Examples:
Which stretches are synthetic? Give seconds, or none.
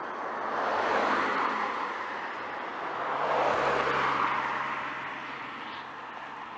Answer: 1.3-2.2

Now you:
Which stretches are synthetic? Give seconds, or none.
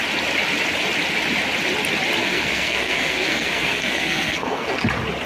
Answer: 2.2-4.8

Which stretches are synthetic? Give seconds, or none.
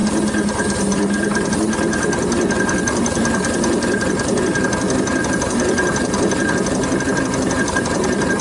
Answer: none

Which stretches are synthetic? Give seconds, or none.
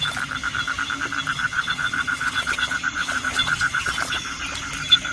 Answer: 1.3-4.4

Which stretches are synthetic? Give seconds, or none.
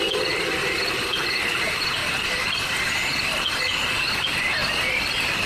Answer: 2.0-3.6; 4.6-5.5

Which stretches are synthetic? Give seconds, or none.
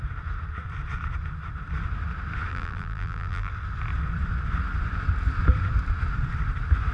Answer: 2.5-3.5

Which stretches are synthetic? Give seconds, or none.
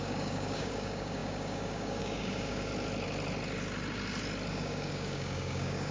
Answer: 0.0-2.7; 4.5-5.9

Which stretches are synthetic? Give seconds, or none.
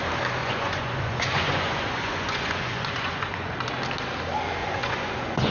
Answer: 0.4-3.7; 4.6-5.5